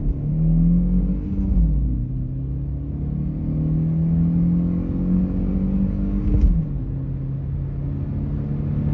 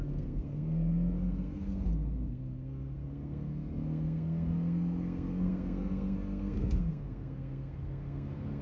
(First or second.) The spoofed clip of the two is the second